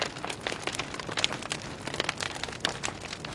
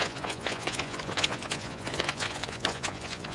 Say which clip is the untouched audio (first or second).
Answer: first